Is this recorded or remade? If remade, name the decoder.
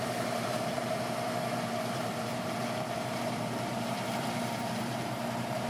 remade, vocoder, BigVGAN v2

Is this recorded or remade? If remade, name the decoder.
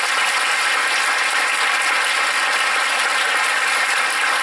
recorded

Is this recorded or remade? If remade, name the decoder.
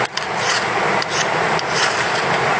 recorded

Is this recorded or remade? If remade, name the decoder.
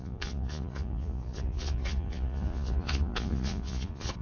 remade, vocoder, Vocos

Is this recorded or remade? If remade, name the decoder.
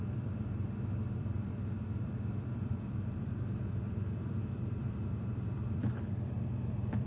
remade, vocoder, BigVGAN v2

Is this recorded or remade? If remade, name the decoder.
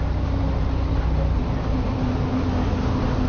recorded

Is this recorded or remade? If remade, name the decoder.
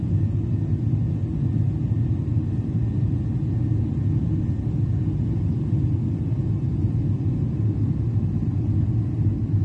recorded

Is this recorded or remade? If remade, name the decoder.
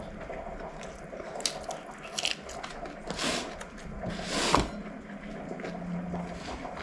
recorded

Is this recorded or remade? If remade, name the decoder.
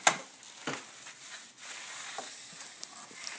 recorded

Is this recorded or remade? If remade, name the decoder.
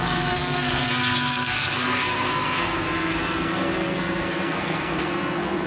remade, codec, SNAC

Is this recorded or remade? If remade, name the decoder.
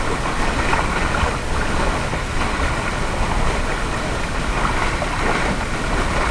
recorded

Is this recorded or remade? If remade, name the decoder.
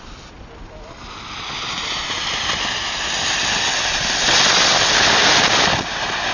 recorded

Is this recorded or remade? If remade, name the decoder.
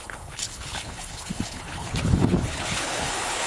remade, codec, HILCodec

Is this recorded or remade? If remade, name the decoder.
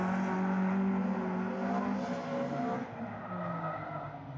recorded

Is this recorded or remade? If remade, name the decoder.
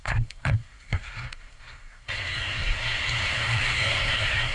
remade, codec, SNAC